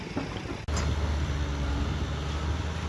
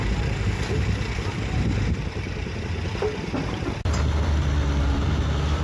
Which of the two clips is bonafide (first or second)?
first